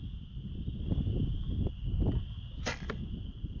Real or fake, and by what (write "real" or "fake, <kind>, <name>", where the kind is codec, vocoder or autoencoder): real